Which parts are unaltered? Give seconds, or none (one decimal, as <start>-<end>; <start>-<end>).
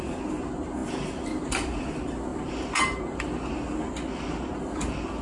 0.0-5.2